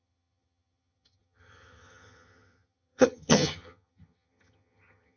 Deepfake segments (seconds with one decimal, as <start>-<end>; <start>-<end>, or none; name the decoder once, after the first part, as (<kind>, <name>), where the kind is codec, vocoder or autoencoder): 0.0-5.2 (vocoder, HiFi-GAN)